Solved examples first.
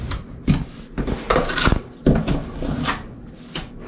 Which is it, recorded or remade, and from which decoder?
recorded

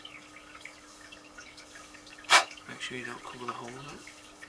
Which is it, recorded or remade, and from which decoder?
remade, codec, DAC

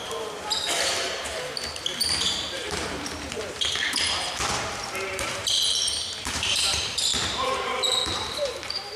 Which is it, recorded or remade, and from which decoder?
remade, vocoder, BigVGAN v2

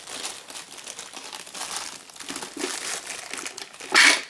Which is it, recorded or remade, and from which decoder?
recorded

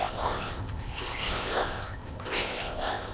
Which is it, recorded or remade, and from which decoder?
remade, codec, ZipCodec